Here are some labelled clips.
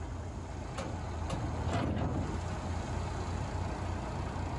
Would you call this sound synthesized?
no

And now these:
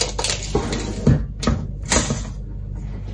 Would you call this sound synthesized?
no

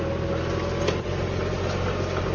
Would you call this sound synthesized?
no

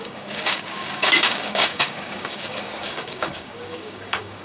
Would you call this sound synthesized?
yes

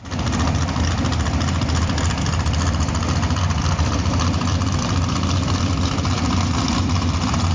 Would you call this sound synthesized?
yes